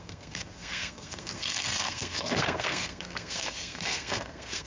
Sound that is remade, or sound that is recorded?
remade